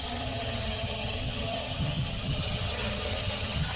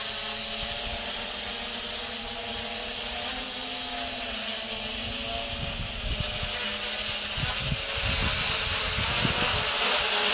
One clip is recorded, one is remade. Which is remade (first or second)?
first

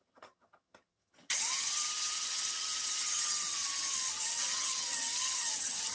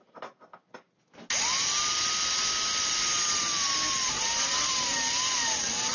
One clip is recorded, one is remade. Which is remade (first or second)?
first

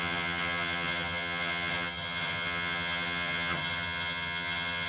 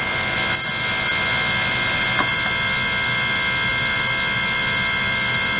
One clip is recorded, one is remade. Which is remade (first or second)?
first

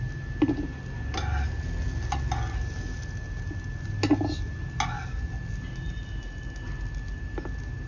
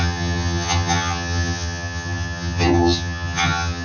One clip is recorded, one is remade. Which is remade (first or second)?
second